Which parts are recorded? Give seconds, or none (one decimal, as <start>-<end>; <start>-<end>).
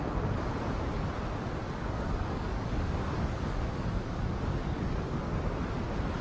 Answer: 0.0-1.6; 5.3-6.2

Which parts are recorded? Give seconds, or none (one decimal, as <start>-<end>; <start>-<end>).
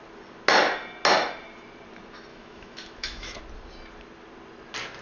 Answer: 0.0-2.3; 3.4-5.0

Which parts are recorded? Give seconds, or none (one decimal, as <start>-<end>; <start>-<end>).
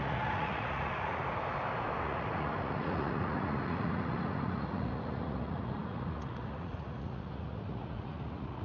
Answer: 1.2-2.0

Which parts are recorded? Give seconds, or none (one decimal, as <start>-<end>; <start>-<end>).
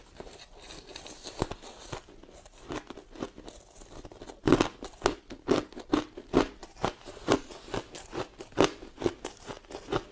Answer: 0.0-10.1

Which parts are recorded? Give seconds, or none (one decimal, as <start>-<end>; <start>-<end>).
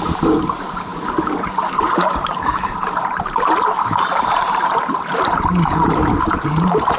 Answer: none